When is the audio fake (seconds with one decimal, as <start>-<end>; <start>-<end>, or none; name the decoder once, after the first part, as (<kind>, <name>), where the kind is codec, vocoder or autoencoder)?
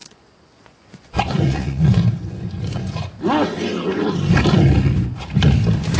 0.0-3.1 (vocoder, Vocos)